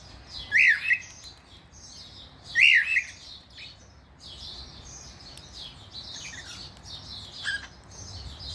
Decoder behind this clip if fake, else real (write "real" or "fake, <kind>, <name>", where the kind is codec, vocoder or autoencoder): real